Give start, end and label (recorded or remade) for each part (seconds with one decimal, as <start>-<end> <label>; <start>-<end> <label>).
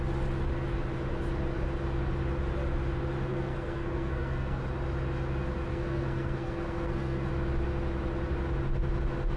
0.0-3.3 recorded; 3.3-4.6 remade; 4.6-5.7 recorded; 5.7-7.3 remade; 7.3-9.4 recorded